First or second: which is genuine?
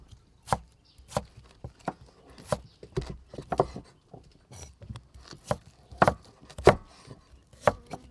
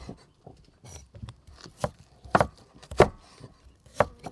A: first